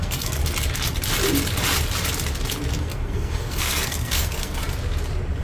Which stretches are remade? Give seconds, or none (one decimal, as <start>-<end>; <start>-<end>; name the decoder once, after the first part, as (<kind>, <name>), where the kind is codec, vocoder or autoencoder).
0.0-0.4 (codec, SNAC); 2.8-4.6